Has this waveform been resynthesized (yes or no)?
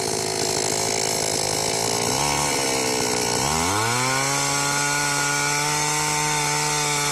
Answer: no